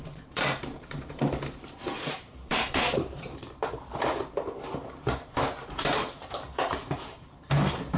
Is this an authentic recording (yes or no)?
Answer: no